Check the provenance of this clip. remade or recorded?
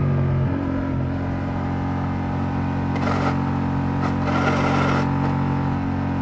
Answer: recorded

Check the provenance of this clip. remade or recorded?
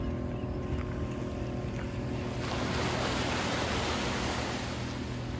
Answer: recorded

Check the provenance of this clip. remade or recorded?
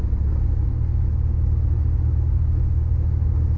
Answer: recorded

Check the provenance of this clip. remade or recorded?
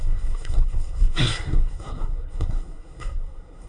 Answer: remade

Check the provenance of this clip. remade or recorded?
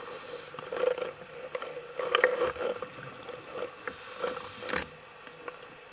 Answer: recorded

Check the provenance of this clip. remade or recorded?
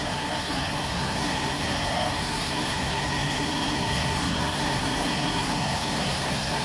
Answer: remade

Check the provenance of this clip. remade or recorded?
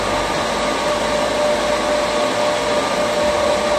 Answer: recorded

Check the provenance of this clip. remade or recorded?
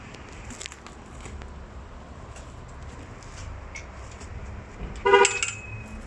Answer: recorded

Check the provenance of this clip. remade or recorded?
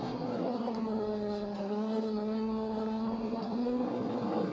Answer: remade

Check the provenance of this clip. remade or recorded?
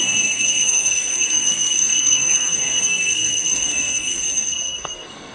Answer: remade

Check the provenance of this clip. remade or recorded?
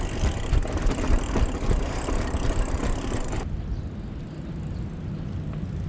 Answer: recorded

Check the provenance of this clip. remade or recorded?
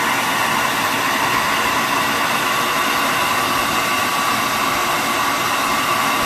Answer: recorded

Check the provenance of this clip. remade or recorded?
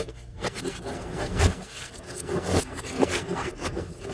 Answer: remade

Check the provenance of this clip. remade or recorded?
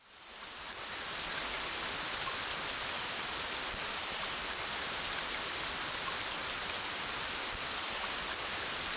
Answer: recorded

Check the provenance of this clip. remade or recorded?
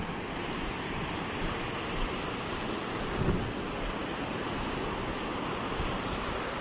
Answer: recorded